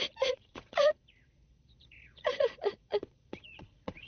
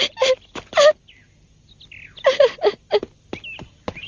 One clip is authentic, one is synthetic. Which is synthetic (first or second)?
first